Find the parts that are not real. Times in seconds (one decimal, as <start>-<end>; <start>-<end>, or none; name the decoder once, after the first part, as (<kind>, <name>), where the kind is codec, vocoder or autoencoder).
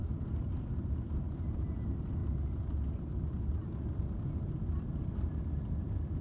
none